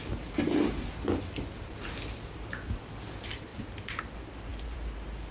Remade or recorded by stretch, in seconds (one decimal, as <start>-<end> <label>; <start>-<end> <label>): 0.0-3.5 recorded; 3.5-4.0 remade; 4.0-4.5 recorded; 4.5-5.3 remade